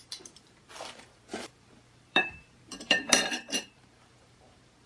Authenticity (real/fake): fake